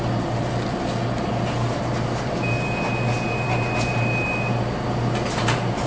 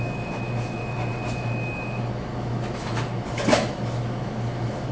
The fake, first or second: second